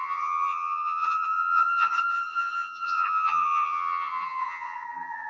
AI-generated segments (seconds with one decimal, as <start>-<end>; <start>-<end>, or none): 0.0-5.3